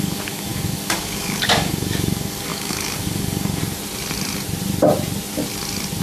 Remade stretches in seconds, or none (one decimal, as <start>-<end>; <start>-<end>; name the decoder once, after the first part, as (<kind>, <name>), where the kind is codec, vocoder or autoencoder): 0.0-3.6 (codec, DAC)